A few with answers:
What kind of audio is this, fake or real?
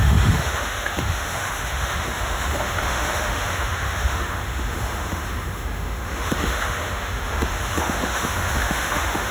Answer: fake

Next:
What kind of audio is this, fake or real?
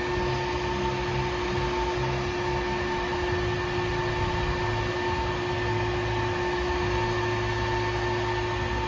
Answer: real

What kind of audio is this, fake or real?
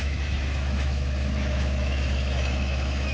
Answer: fake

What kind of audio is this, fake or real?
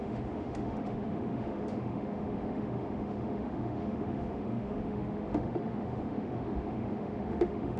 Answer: fake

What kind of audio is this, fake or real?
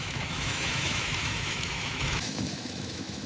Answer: fake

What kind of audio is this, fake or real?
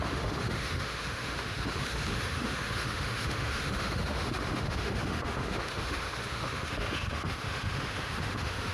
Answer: fake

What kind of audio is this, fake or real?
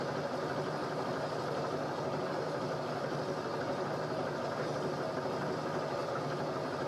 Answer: real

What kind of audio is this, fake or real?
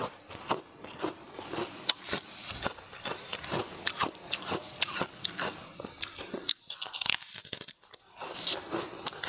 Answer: real